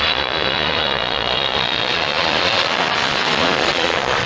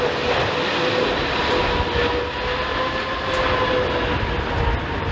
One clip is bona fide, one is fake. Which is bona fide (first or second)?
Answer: second